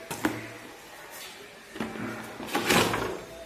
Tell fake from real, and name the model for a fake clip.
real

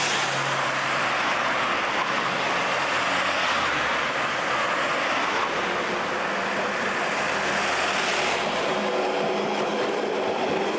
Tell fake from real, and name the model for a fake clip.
real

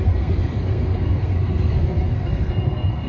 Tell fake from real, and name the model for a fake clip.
fake, codec, SNAC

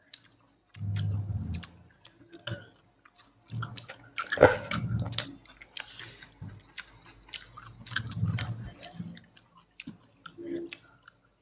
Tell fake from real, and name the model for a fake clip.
real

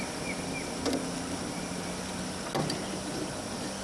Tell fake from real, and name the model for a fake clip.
real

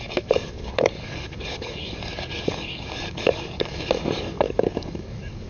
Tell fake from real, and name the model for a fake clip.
fake, codec, DAC